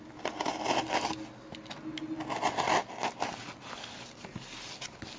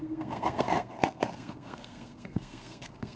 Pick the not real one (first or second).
second